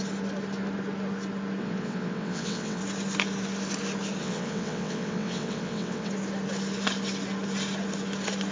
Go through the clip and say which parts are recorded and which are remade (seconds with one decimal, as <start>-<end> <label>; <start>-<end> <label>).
0.0-1.6 recorded; 1.6-2.8 remade; 2.8-4.2 recorded; 4.2-6.1 remade; 6.1-8.5 recorded